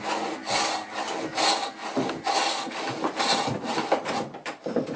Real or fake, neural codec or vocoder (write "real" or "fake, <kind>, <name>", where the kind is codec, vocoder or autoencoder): real